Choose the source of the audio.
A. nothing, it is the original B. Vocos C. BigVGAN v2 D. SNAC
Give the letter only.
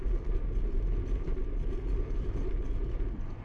A